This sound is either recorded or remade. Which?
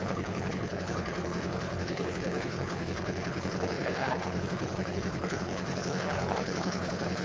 remade